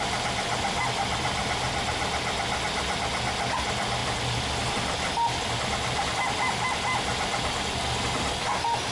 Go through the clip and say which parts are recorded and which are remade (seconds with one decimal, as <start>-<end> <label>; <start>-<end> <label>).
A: 0.0-8.9 recorded